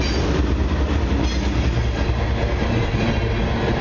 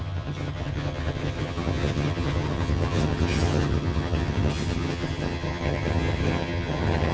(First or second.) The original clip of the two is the first